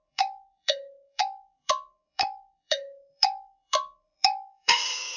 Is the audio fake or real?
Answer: fake